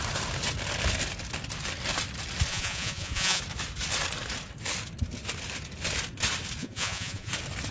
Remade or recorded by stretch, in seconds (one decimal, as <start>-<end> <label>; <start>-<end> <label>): 0.0-2.5 recorded; 2.5-3.4 remade; 3.4-6.6 recorded; 6.6-7.3 remade; 7.3-7.7 recorded